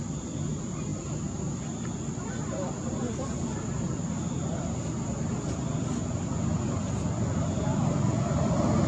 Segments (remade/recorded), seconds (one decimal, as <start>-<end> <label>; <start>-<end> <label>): 0.0-8.9 recorded